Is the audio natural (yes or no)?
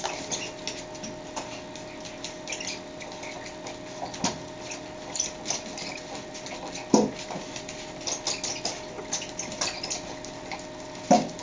yes